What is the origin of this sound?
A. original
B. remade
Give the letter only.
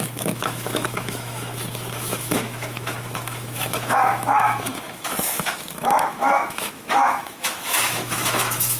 B